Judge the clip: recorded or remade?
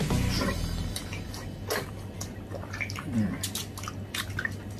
recorded